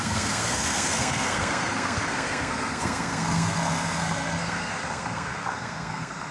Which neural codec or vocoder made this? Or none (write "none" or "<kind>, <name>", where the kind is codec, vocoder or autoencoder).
codec, SNAC